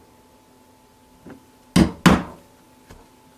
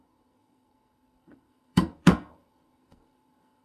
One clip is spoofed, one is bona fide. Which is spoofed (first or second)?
second